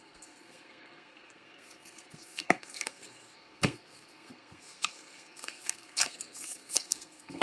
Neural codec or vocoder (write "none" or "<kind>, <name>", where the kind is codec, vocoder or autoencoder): codec, SNAC